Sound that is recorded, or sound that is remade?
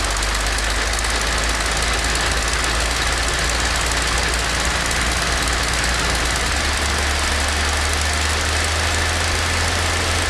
recorded